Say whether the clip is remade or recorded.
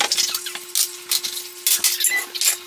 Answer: recorded